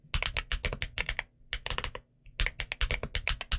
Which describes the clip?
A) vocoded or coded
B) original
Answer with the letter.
B